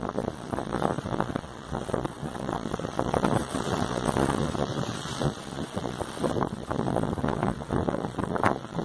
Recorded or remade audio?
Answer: remade